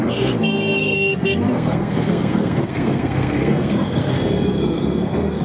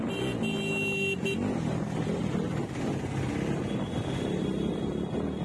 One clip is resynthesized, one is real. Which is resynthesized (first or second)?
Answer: first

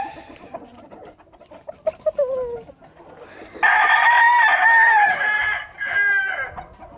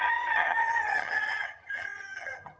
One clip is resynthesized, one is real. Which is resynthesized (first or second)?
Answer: second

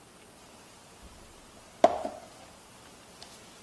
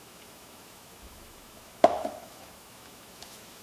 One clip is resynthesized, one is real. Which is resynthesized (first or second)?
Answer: second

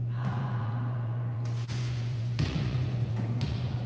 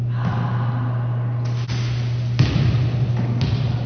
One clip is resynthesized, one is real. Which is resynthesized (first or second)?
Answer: first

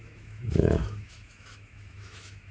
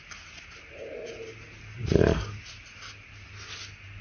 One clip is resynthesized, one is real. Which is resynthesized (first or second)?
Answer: first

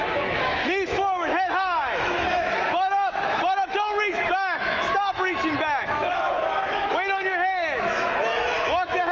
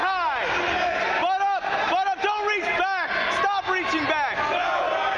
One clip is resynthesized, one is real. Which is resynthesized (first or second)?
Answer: first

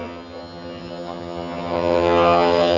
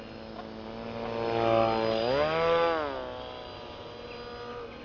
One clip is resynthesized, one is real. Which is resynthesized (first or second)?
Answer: first